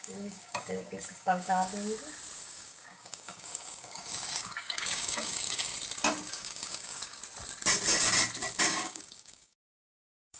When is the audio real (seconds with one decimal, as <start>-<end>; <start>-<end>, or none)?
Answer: 1.7-2.4; 5.7-6.3; 7.2-8.6